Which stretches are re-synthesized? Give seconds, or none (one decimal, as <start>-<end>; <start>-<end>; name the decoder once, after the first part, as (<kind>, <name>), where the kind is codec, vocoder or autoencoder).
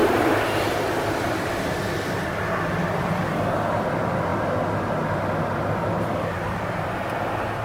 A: none